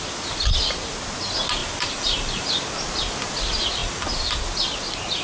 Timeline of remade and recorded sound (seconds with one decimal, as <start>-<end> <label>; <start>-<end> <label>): 0.0-1.6 recorded; 1.6-2.5 remade; 2.5-3.8 recorded; 3.8-4.4 remade; 4.4-5.2 recorded

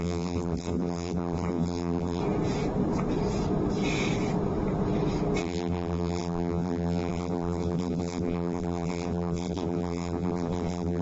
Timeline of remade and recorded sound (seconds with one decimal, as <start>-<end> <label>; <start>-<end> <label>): 0.0-2.2 remade; 2.2-5.4 recorded; 5.4-11.0 remade

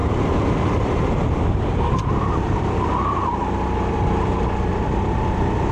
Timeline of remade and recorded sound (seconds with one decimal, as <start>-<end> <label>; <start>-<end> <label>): 0.0-3.4 remade; 3.4-5.7 recorded